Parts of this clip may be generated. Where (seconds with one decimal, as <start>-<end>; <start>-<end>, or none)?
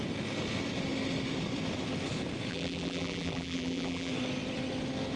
2.5-4.1